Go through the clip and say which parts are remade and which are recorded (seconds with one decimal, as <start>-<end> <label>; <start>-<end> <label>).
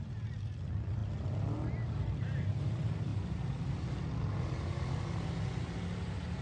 0.0-6.4 recorded